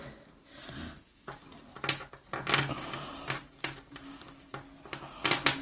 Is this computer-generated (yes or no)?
no